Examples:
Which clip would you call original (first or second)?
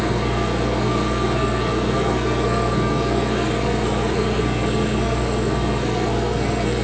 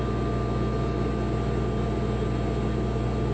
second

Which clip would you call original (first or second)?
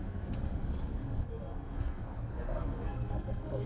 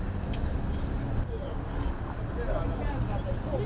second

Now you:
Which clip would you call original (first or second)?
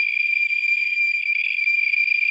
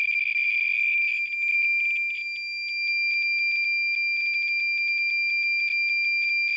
second